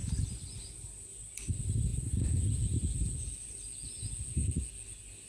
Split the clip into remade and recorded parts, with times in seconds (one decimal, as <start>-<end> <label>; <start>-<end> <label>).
0.0-5.3 recorded